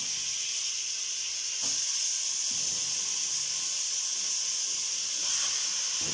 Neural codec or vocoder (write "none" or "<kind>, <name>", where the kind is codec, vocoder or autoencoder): none